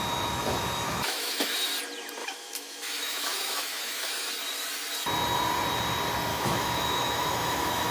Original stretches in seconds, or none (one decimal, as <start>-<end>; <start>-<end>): 0.0-0.4; 1.7-2.2; 4.3-6.3